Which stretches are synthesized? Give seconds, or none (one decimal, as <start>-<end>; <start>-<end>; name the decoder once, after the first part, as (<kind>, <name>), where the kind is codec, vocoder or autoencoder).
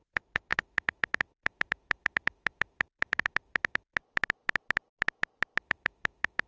0.0-4.0 (autoencoder, DAC-VAE); 5.6-6.5